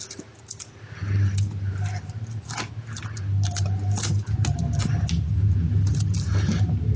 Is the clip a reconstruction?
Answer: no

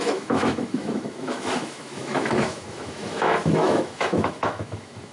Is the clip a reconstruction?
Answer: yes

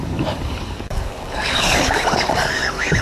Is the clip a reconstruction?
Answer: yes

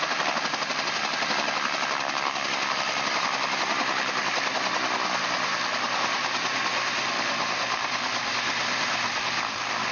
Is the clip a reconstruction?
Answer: no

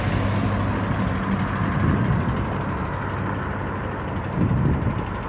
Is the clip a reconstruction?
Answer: no